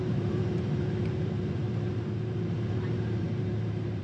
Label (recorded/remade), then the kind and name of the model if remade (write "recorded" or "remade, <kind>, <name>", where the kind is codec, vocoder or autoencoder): remade, vocoder, BigVGAN v2